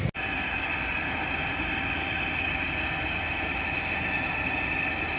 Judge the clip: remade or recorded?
recorded